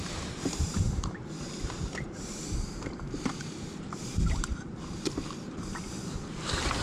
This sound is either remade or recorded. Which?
remade